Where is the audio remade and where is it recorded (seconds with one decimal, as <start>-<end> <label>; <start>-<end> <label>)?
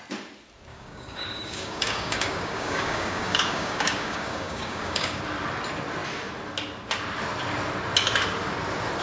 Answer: 0.0-0.7 recorded; 0.7-5.2 remade; 5.2-9.0 recorded